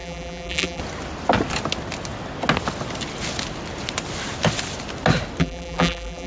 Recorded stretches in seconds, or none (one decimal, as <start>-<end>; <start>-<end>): 0.8-5.4